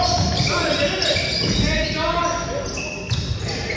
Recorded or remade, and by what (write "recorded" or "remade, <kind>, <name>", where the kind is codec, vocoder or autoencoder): recorded